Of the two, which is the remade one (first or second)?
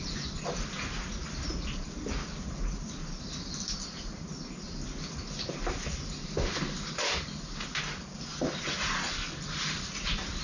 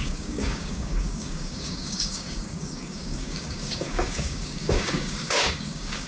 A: second